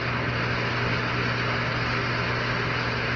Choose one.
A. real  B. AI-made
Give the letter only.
A